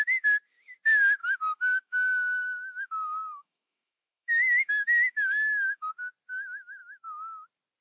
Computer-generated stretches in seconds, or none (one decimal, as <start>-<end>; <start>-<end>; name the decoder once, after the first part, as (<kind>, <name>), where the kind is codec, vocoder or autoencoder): 1.2-5.9 (autoencoder, DAC-VAE)